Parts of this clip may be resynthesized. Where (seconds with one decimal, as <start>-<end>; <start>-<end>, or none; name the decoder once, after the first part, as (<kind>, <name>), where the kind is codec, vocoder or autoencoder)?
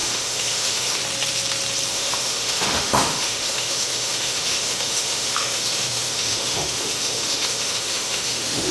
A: 0.0-1.0 (autoencoder, DAC-VAE); 1.9-8.7